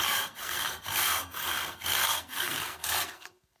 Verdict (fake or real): fake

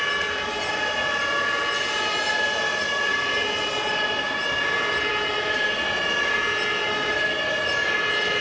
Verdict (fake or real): real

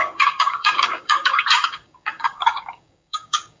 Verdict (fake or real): fake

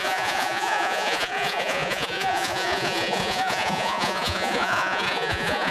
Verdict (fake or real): fake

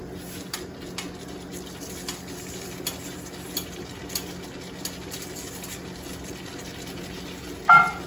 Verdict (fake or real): real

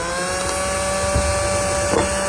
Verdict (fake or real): real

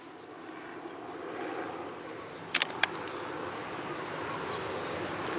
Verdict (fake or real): real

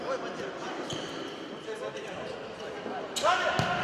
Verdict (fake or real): real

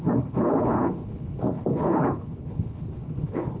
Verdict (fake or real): fake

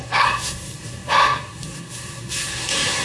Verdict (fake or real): fake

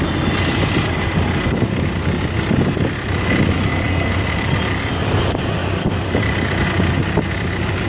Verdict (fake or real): real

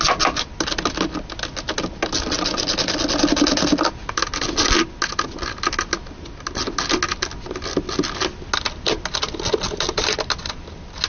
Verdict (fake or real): real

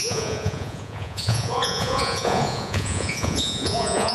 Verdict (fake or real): fake